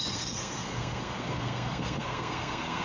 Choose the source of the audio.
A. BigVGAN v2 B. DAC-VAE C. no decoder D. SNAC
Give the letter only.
D